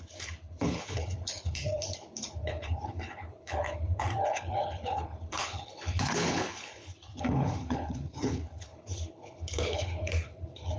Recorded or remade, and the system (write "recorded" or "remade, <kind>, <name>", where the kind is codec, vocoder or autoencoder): remade, codec, HILCodec